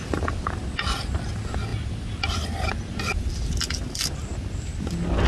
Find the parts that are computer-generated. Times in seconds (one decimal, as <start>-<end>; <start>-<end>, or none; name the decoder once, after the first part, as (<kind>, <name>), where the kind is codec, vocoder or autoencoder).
none